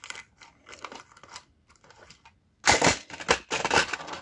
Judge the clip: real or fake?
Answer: real